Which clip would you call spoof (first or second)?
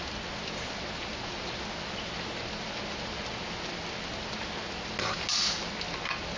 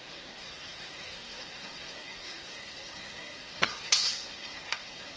second